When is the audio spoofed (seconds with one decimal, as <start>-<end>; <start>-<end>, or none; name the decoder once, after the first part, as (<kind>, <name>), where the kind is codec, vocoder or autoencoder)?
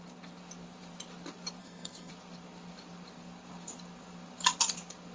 1.6-2.1 (codec, SNAC)